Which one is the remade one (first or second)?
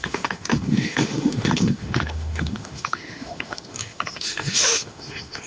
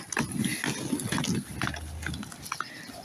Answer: first